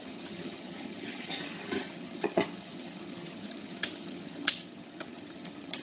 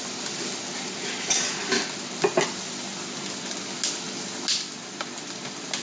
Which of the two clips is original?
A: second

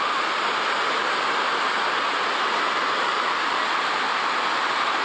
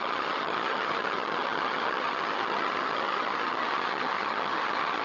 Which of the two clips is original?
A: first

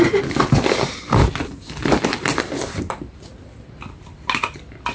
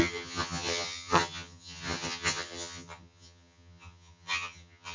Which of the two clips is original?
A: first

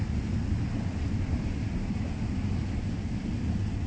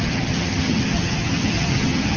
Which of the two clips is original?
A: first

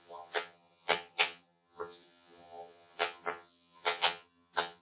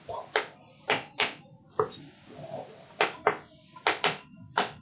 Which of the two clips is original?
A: second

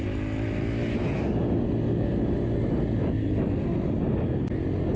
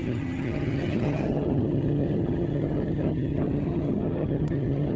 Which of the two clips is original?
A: first